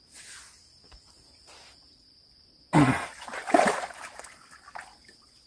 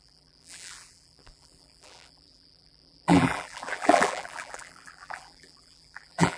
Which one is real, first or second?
first